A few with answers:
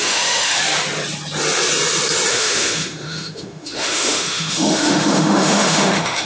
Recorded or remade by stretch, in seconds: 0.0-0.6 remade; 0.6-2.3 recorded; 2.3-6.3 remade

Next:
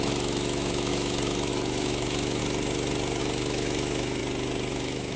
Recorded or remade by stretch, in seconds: 0.0-2.4 remade; 2.4-3.2 recorded; 3.2-4.2 remade; 4.2-4.7 recorded; 4.7-5.2 remade